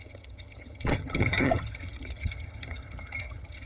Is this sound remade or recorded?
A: remade